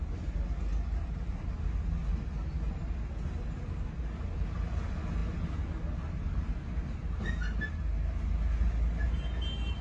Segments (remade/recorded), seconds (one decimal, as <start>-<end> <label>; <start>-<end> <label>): 0.0-9.8 recorded